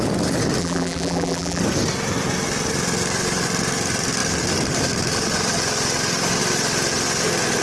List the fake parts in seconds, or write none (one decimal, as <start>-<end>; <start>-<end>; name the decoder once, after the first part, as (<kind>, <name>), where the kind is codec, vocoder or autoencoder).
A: 0.6-1.6 (vocoder, BigVGAN v2)

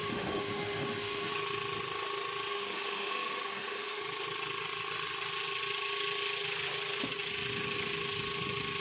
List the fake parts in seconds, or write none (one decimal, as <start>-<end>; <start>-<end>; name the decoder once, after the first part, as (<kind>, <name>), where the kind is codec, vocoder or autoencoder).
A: 0.0-1.3 (autoencoder, DAC-VAE); 2.5-4.0

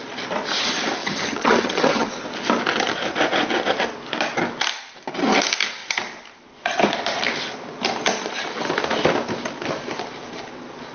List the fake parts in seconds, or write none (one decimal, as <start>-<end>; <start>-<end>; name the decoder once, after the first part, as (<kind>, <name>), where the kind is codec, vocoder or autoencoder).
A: 1.0-2.1 (vocoder, HiFi-GAN)

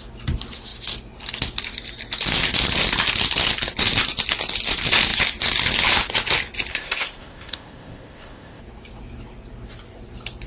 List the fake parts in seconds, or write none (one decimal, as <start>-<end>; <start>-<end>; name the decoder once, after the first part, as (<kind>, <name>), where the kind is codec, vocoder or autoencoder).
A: 6.7-8.6 (codec, ZipCodec)